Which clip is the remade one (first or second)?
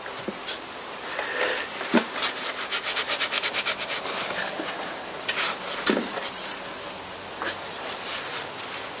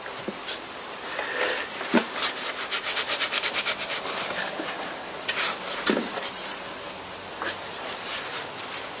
second